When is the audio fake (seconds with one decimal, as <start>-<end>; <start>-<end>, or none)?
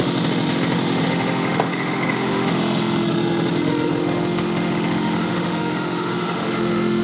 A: 0.0-7.0